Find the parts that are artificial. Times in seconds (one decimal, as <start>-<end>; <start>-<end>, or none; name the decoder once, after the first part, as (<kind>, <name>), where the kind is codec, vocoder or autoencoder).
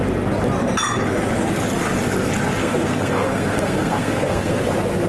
2.6-4.6 (codec, SNAC)